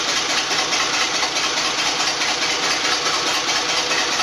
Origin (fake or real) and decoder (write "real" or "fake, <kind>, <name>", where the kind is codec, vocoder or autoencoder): real